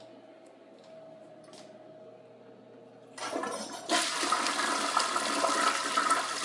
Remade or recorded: recorded